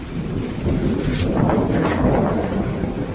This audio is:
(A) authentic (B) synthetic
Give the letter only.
A